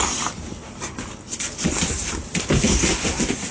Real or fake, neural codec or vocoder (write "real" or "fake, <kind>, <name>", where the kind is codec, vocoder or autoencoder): real